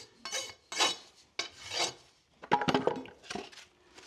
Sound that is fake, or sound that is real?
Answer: real